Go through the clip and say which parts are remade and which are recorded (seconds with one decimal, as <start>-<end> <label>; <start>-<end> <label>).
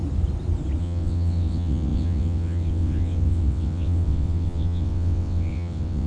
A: 0.0-0.8 recorded; 0.8-6.1 remade